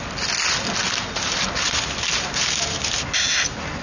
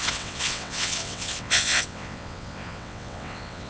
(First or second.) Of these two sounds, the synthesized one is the second